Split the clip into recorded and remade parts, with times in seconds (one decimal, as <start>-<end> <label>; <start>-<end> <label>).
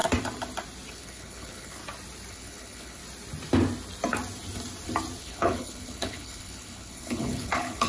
0.0-0.9 recorded; 0.9-1.8 remade; 1.8-2.3 recorded; 2.3-3.0 remade; 3.0-5.2 recorded; 5.2-7.9 remade